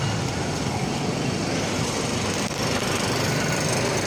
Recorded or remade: recorded